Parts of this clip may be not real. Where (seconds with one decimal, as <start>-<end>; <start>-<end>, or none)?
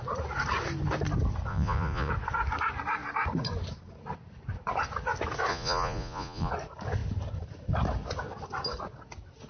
1.5-2.1; 5.5-6.5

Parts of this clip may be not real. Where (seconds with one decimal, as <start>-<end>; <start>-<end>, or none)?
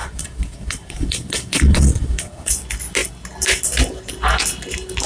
0.0-2.5